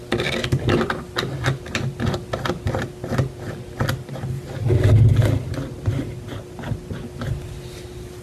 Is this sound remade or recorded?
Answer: recorded